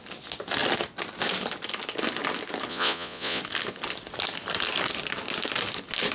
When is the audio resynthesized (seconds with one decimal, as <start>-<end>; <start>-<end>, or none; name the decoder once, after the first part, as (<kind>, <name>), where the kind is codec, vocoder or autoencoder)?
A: 2.7-3.4 (vocoder, Vocos)